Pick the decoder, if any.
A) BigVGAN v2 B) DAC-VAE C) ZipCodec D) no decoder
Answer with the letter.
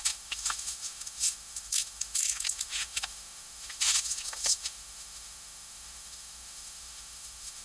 B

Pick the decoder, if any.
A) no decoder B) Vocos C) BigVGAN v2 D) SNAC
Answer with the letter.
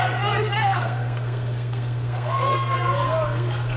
D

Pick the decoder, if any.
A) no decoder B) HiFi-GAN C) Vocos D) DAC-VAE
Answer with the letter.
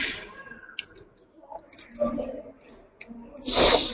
A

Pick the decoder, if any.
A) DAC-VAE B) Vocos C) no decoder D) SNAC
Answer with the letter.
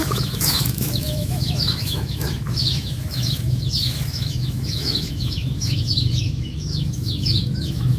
A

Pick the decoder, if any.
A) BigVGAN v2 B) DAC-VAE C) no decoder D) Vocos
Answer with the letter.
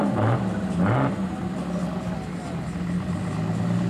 C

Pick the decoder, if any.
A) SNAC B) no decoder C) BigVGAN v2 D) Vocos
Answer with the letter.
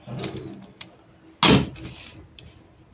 B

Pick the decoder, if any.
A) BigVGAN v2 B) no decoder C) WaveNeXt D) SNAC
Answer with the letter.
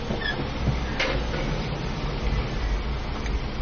B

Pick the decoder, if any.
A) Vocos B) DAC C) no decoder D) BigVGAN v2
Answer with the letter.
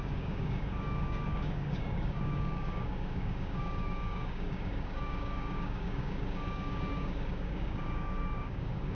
B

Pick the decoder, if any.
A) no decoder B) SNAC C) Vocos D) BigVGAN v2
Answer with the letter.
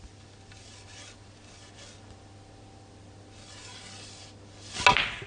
A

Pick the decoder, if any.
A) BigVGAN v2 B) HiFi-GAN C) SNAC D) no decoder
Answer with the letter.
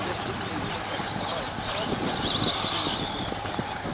D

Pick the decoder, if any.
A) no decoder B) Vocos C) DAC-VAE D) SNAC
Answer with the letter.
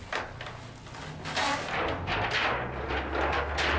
A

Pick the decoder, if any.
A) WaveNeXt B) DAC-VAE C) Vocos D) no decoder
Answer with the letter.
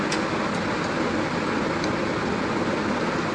D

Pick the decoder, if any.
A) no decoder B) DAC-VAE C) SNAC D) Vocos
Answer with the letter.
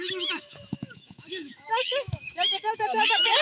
B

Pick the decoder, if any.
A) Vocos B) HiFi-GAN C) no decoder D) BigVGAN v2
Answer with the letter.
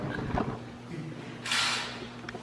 C